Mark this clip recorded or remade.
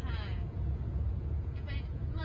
remade